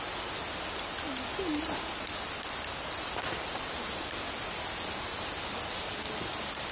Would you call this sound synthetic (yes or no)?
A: no